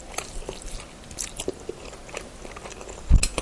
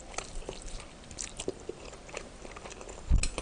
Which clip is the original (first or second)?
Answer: first